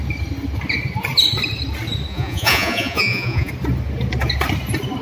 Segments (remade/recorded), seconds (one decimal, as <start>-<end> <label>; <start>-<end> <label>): 0.0-2.1 recorded; 2.1-3.5 remade; 3.5-5.0 recorded